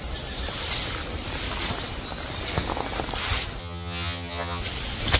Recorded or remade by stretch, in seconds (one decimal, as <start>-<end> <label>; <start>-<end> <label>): 0.0-3.6 recorded; 3.6-4.6 remade; 4.6-5.2 recorded